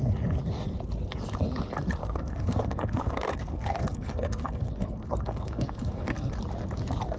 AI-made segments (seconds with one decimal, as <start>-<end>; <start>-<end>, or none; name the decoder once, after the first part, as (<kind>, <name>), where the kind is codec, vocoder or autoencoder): 2.0-6.3 (codec, SNAC)